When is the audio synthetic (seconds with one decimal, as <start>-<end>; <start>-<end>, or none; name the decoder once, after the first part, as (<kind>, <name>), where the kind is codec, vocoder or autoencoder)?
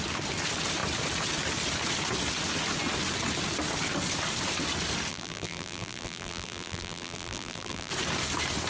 5.1-7.9 (vocoder, BigVGAN v2)